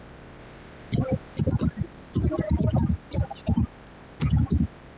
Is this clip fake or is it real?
real